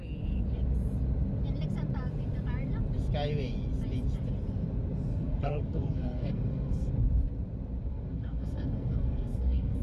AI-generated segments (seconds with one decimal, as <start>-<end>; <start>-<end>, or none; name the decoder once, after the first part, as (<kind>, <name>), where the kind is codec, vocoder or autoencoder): 5.1-6.9 (codec, SNAC); 7.9-9.8